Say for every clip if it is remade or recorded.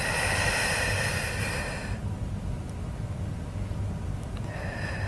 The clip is recorded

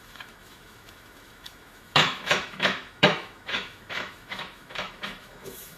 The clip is remade